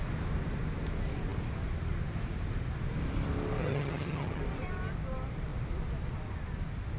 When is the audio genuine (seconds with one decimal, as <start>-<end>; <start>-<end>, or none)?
0.0-3.6; 4.4-7.0